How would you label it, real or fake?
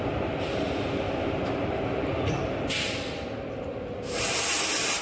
real